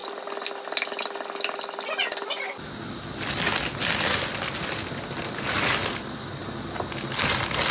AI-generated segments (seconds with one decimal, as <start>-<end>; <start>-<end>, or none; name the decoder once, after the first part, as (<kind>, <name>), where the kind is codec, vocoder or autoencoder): none